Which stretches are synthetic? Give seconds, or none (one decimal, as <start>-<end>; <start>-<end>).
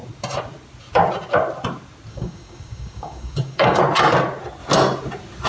2.1-3.8